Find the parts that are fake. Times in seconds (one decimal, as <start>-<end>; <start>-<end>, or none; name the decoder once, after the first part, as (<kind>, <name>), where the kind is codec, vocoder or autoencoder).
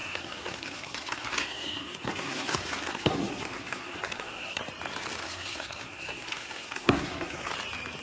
0.0-4.6 (codec, SNAC); 5.2-7.5